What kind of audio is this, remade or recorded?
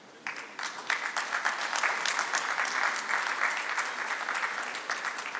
recorded